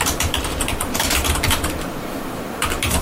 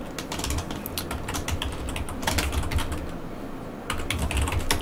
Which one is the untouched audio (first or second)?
second